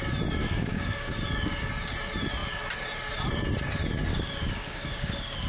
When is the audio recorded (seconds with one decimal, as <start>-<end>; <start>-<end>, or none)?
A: 0.0-0.4; 1.7-4.1